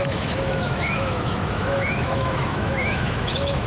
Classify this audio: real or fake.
fake